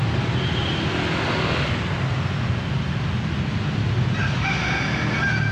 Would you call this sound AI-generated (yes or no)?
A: no